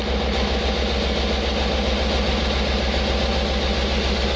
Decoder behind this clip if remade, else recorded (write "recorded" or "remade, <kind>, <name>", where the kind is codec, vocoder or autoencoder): recorded